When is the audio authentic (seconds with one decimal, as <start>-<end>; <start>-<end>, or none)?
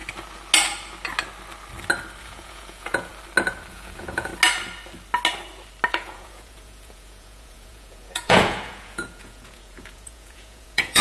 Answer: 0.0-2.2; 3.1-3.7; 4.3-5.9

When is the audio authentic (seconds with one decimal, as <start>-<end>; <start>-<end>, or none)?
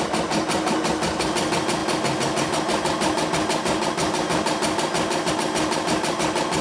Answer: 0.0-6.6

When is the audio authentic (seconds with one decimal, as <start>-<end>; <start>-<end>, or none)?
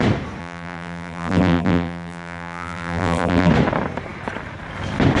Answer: 0.0-0.4; 3.5-5.2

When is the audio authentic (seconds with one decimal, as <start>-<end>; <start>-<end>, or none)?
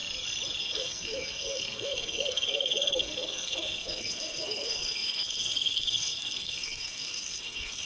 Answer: 0.0-0.6